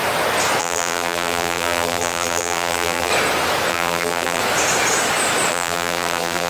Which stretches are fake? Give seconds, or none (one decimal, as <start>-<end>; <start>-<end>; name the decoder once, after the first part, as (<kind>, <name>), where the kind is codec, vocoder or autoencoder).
0.6-3.1 (vocoder, BigVGAN v2); 3.7-4.4; 5.5-6.5